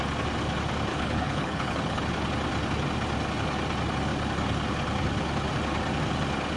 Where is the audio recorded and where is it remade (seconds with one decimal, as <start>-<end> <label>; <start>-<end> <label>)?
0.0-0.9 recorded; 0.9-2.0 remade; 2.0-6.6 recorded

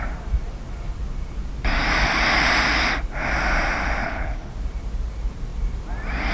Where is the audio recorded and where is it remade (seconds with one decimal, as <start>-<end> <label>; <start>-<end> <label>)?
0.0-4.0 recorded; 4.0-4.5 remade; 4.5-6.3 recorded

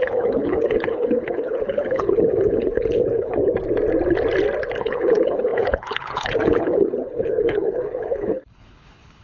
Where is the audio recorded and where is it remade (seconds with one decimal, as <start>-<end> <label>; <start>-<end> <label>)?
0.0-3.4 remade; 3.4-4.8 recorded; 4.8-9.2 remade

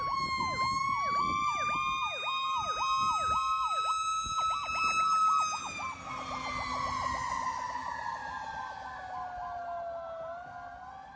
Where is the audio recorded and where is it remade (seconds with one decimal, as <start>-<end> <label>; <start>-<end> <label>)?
0.0-11.2 recorded

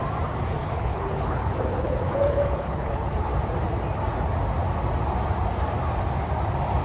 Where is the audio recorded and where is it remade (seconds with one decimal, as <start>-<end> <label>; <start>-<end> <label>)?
0.0-0.6 recorded; 0.6-3.3 remade; 3.3-6.8 recorded

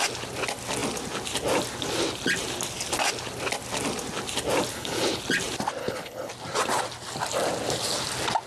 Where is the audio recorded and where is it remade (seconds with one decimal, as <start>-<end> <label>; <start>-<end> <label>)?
0.0-4.7 recorded; 4.7-5.2 remade; 5.2-5.8 recorded; 5.8-6.3 remade; 6.3-8.5 recorded

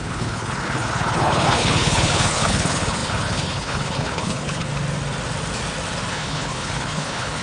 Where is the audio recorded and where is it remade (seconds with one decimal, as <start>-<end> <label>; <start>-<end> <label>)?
0.0-4.7 remade; 4.7-6.1 recorded; 6.1-7.4 remade